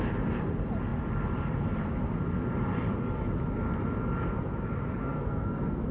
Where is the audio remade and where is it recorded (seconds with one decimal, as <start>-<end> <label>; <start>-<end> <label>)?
0.0-5.0 recorded; 5.0-5.9 remade